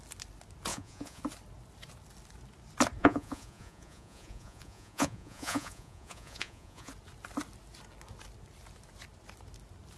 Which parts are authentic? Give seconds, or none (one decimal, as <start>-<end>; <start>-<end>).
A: 0.0-0.7; 1.2-3.0; 6.9-10.0

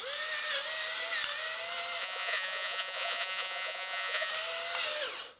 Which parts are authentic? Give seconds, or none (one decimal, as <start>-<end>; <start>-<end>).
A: 0.0-2.0; 4.3-5.4

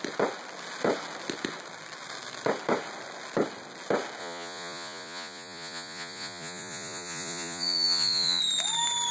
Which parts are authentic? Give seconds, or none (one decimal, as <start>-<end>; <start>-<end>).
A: 0.0-4.2; 8.4-9.1

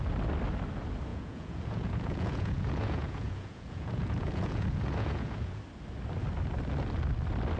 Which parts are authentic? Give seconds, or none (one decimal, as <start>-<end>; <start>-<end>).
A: 0.0-1.1; 5.6-7.6

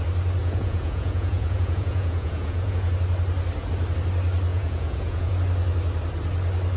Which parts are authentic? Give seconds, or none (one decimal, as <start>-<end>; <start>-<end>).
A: 0.0-0.4; 2.9-4.5; 5.3-6.8

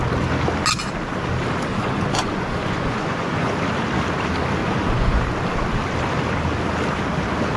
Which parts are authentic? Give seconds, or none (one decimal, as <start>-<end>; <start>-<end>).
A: 0.0-1.7; 3.5-4.6; 5.2-7.6